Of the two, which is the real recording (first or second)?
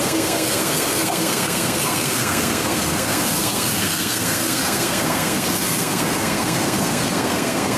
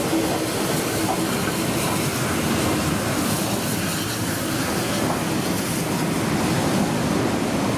second